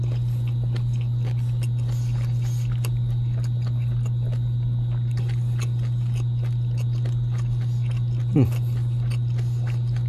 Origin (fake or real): real